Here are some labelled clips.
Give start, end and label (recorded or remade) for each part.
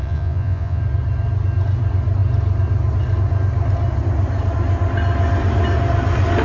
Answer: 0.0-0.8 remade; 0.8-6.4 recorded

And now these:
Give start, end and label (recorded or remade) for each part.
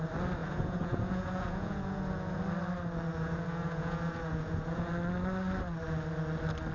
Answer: 0.0-0.4 recorded; 0.4-2.4 remade; 2.4-3.1 recorded; 3.1-4.9 remade; 4.9-6.7 recorded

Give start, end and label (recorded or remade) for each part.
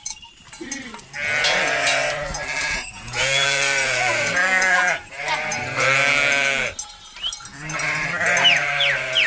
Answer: 0.0-2.6 recorded; 2.6-5.1 remade; 5.1-9.3 recorded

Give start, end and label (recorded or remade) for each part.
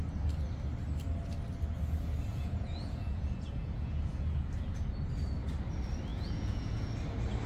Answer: 0.0-2.3 recorded; 2.3-4.5 remade; 4.5-6.1 recorded; 6.1-6.9 remade; 6.9-7.5 recorded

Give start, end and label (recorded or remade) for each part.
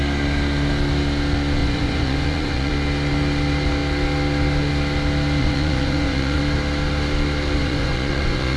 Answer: 0.0-1.6 recorded; 1.6-2.7 remade; 2.7-5.4 recorded; 5.4-6.4 remade; 6.4-7.6 recorded; 7.6-8.6 remade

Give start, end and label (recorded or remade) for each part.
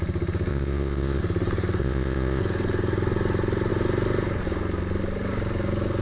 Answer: 0.0-0.5 recorded; 0.5-1.2 remade; 1.2-1.8 recorded; 1.8-2.4 remade; 2.4-6.0 recorded